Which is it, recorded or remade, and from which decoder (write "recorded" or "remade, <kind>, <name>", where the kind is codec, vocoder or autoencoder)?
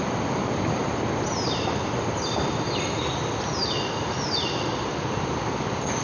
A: recorded